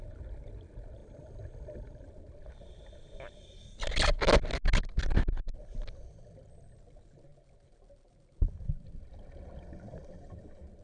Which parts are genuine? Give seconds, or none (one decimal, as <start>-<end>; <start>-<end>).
0.0-10.8